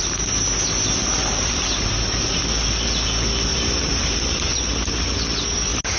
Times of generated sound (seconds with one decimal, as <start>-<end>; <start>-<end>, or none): 1.0-2.4; 3.5-4.9